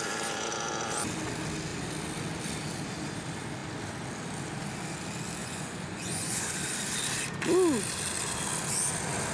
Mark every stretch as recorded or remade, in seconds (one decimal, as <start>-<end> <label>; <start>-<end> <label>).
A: 0.0-5.4 recorded; 5.4-6.6 remade; 6.6-9.3 recorded